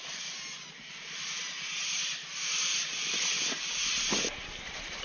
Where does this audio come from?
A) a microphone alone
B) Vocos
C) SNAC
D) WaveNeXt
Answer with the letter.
A